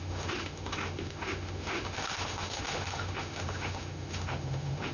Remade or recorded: remade